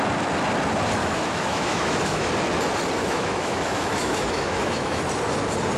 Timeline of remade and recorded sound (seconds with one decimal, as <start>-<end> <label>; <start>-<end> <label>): 0.0-1.0 recorded; 1.0-2.3 remade; 2.3-3.0 recorded; 3.0-5.0 remade; 5.0-5.8 recorded